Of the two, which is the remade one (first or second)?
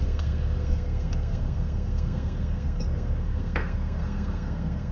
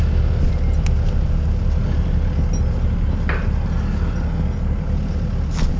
first